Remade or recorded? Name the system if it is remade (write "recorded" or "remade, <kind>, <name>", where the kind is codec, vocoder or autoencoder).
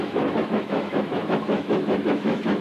remade, autoencoder, DAC-VAE